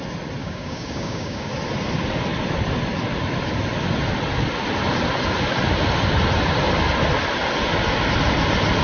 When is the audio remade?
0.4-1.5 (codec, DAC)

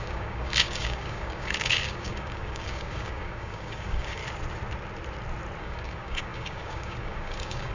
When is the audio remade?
0.0-4.2 (codec, DAC); 5.6-7.7

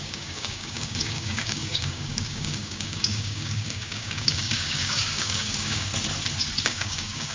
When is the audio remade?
0.0-5.9 (codec, DAC); 6.6-7.3

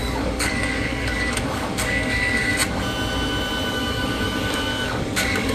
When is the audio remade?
0.0-2.5 (codec, DAC); 3.7-5.5

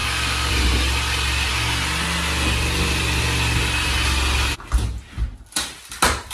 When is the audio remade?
0.0-0.5 (codec, DAC)

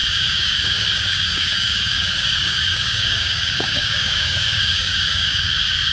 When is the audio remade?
0.0-5.9 (codec, DAC)

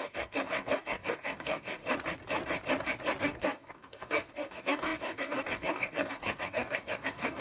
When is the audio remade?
0.0-1.8 (codec, DAC); 3.2-7.4

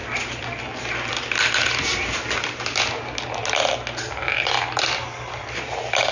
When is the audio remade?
none